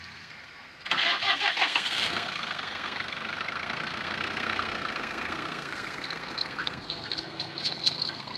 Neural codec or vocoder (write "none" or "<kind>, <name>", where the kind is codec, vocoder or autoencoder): codec, SNAC